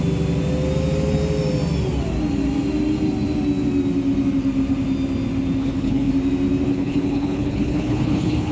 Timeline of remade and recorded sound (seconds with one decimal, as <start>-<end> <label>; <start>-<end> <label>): 0.0-5.6 recorded; 5.6-6.1 remade; 6.1-6.7 recorded; 6.7-8.5 remade